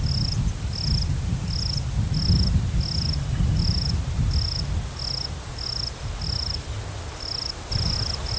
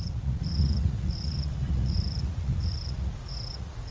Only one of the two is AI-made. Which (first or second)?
second